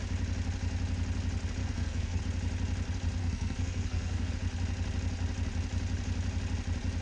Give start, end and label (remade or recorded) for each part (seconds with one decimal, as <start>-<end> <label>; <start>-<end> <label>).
0.0-1.6 recorded; 1.6-2.2 remade; 2.2-3.2 recorded; 3.2-4.3 remade; 4.3-7.0 recorded